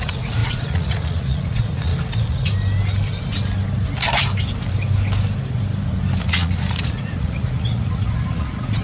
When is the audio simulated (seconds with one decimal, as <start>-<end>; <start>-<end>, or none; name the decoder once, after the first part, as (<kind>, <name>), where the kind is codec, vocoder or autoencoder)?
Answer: 0.0-1.9 (vocoder, Vocos); 6.2-8.8